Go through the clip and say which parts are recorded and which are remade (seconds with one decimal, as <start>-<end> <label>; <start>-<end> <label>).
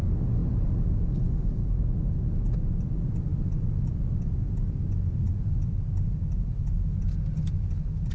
0.0-8.1 recorded